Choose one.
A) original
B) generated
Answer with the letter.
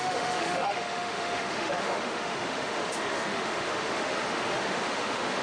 B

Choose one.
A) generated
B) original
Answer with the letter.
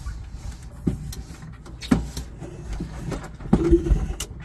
B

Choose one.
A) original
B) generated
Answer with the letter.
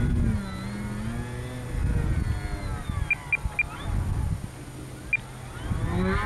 A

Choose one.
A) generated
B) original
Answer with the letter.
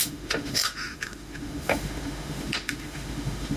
A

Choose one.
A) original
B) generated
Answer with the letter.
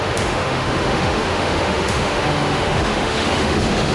B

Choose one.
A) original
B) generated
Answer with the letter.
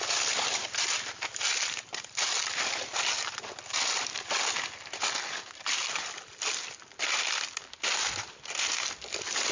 A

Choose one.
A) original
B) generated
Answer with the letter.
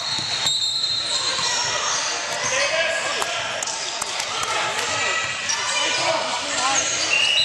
A